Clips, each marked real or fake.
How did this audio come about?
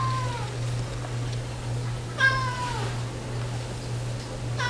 real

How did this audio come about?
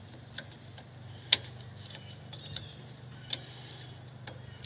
real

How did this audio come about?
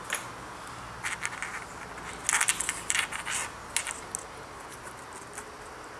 real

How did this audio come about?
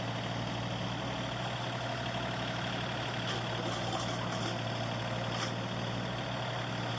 real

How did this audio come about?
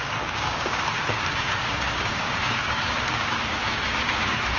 fake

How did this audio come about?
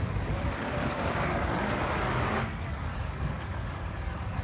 fake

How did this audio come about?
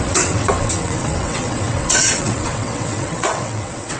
fake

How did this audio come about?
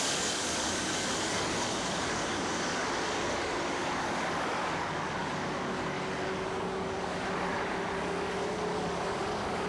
fake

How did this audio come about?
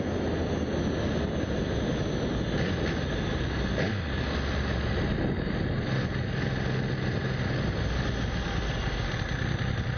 real